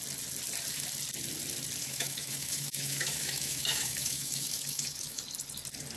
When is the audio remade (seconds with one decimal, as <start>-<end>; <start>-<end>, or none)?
1.8-5.2